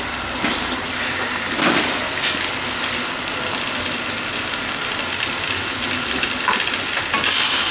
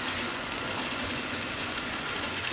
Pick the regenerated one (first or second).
second